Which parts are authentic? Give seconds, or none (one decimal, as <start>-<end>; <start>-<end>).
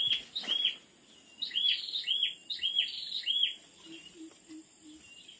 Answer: 0.0-5.4